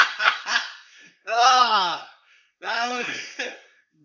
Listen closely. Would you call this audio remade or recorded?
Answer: remade